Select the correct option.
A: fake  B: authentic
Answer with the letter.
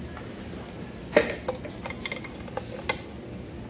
B